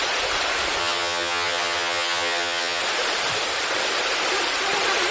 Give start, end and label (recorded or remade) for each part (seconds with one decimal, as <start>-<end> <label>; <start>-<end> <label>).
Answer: 0.0-0.8 recorded; 0.8-2.8 remade; 2.8-5.1 recorded